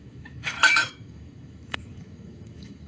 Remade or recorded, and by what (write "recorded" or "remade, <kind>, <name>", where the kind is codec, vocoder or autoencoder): remade, autoencoder, DAC-VAE